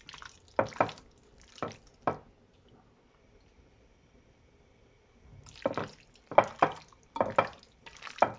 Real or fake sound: real